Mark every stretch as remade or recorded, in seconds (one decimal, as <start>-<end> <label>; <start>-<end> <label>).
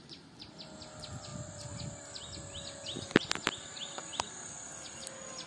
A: 0.0-5.5 recorded